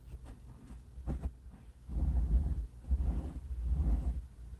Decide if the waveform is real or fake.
real